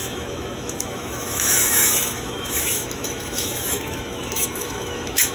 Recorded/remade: remade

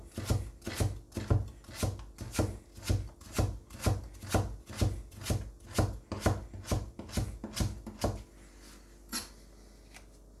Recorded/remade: recorded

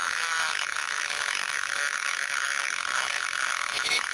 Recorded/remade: remade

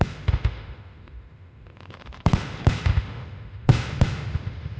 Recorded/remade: remade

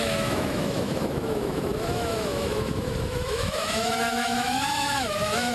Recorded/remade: remade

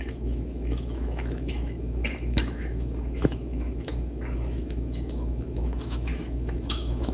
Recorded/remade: remade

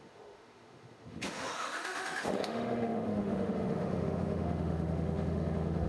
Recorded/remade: remade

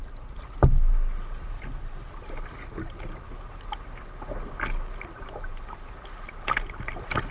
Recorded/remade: recorded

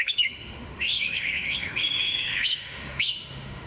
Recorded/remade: remade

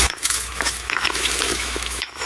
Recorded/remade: remade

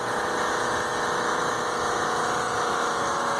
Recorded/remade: remade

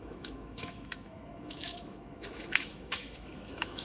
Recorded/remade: remade